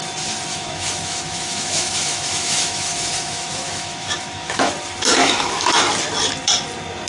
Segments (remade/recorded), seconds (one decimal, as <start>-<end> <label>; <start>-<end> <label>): 0.0-0.5 recorded; 0.5-4.7 remade; 4.7-5.2 recorded; 5.2-5.8 remade; 5.8-7.1 recorded